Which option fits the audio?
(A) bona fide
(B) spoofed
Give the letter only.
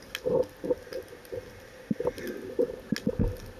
A